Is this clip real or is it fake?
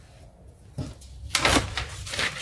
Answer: real